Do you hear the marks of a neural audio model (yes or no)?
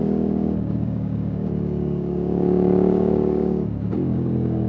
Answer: yes